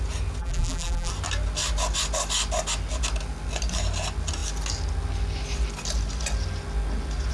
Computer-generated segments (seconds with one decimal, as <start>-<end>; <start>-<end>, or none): 0.4-1.1